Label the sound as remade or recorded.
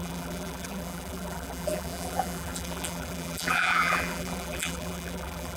remade